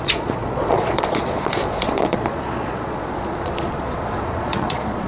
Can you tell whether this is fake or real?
fake